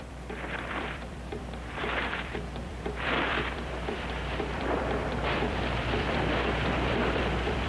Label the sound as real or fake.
fake